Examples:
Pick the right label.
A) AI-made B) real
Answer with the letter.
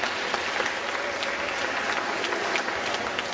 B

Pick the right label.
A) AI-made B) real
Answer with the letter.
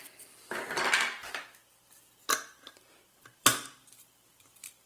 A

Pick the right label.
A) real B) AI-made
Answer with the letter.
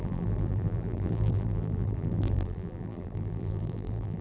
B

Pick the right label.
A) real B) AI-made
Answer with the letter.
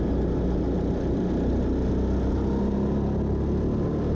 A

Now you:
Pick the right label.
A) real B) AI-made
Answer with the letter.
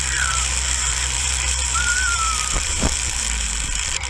B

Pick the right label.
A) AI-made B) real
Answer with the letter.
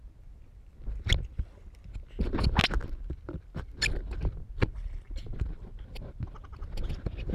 B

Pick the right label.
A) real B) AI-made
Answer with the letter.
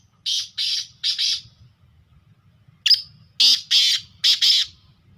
A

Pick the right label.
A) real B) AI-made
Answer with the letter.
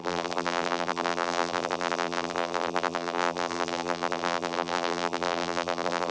B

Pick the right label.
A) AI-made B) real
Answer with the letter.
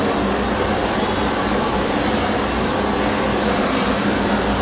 B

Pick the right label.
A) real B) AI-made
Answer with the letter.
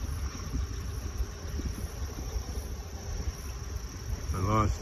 A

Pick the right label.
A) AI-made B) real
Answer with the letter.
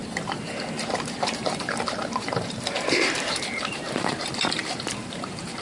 A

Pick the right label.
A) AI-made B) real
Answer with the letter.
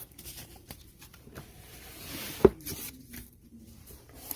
A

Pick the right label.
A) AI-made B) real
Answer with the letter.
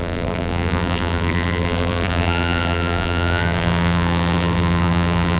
A